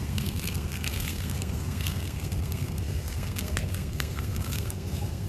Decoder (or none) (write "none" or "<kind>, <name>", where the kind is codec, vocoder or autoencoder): codec, SNAC